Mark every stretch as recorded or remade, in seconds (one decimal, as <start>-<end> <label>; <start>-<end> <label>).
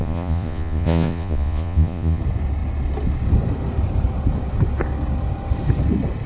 0.0-2.2 remade; 2.2-6.3 recorded